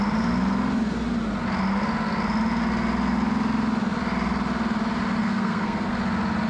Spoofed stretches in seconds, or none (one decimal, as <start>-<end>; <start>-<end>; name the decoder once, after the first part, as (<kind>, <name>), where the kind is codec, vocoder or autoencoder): 5.2-5.9 (codec, SNAC)